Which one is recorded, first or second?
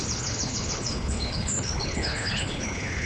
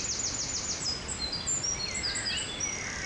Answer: second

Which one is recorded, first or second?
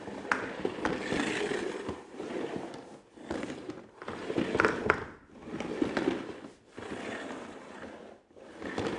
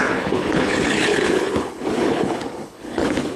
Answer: first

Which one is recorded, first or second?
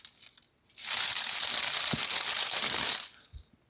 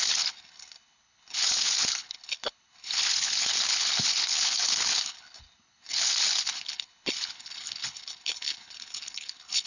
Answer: first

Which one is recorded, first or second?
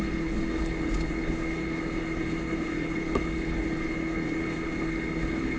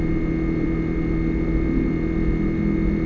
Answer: second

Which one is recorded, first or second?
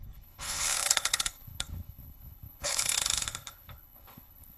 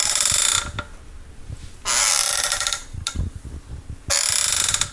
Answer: second